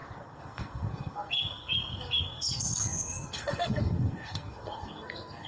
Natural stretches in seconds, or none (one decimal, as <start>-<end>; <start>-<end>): none